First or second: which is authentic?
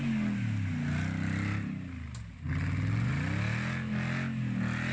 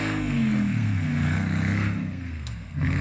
first